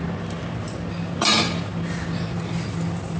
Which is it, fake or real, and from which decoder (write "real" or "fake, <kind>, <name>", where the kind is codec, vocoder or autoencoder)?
real